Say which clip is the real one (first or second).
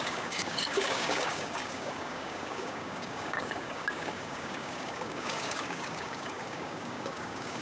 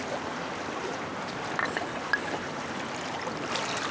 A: second